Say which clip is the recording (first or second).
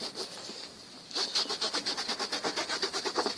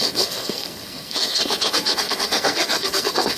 first